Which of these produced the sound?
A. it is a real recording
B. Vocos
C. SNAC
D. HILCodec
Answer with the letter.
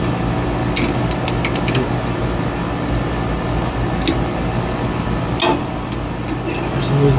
A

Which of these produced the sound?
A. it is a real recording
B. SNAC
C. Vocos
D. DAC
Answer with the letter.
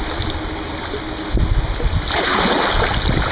A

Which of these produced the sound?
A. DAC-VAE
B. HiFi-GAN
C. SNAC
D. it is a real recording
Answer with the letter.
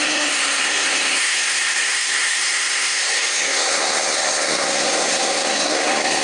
C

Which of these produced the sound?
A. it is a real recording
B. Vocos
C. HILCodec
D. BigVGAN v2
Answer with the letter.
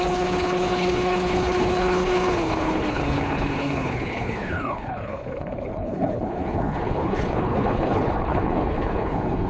C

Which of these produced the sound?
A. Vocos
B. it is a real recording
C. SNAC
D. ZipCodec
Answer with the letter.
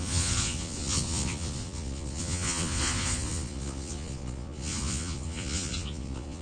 A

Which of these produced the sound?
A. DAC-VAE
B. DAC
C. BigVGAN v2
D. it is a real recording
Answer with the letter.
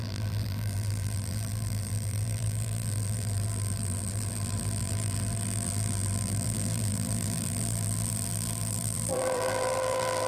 C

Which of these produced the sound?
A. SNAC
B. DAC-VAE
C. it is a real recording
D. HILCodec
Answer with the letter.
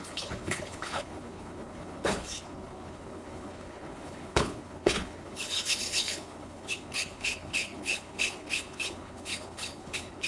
D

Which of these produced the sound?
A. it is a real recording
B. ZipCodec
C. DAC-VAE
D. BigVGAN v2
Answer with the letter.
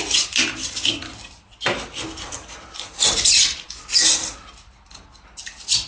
A